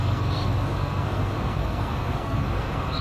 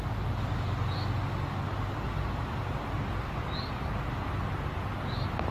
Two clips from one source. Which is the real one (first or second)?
second